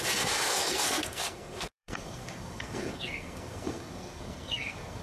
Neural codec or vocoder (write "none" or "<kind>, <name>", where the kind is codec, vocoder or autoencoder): codec, SNAC